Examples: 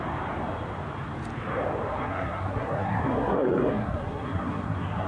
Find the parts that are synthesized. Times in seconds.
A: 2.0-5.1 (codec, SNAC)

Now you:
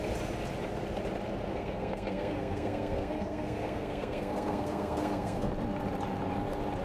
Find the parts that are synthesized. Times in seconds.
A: 1.5-5.5 (codec, SNAC)

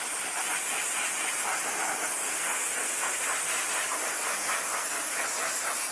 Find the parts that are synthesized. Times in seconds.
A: 2.2-3.2 (codec, SNAC); 4.1-5.2

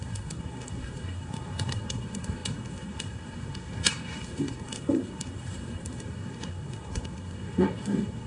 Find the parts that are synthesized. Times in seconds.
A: 0.0-8.3 (codec, SNAC)

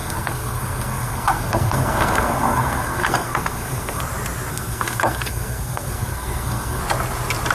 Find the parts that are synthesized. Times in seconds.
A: 0.0-4.0 (codec, SNAC); 4.5-6.8

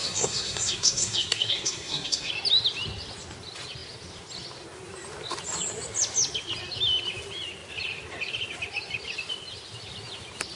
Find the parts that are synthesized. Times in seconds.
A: 0.0-2.3 (codec, SNAC)